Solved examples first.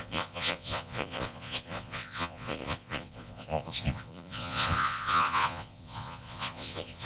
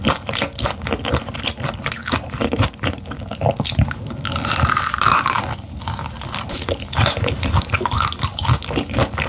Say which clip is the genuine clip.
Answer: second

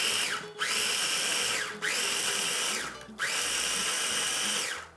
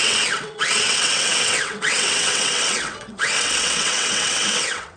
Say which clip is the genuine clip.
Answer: first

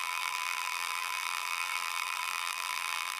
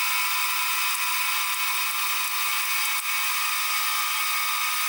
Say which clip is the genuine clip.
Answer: second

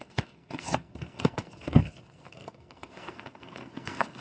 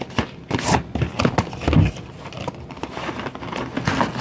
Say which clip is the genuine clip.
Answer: second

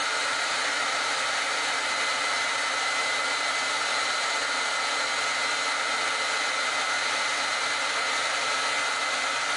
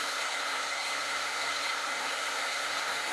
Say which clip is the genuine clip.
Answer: first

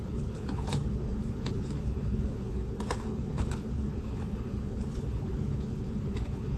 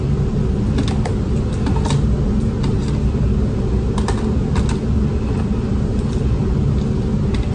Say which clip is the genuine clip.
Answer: second